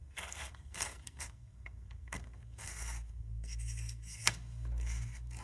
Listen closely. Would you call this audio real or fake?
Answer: fake